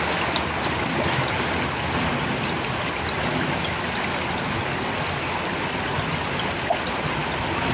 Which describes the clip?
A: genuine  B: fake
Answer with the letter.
A